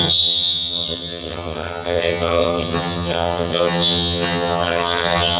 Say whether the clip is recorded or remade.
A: remade